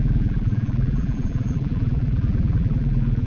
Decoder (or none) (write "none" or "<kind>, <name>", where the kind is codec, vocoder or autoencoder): vocoder, BigVGAN v2